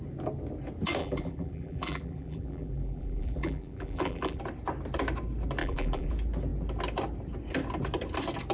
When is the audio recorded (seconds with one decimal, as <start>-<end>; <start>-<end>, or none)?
0.0-1.0; 4.4-5.6; 6.1-8.5